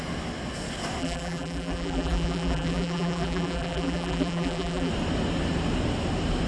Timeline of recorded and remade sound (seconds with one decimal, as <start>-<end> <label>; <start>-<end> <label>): 0.0-1.0 recorded; 1.0-4.9 remade; 4.9-6.5 recorded